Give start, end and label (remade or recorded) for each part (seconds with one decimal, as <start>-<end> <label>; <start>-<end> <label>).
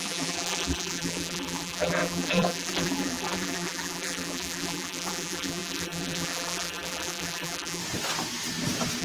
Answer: 0.0-7.8 remade; 7.8-9.0 recorded